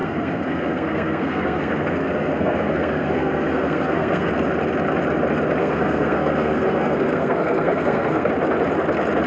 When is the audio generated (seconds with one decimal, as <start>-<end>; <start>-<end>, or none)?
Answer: 0.0-4.3; 5.6-8.3